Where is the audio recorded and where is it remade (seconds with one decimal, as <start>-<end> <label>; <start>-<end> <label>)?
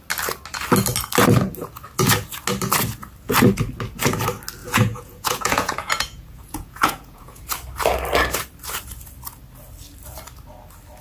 0.0-4.6 recorded; 4.6-7.4 remade; 7.4-11.0 recorded